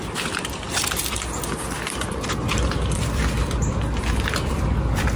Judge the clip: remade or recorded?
remade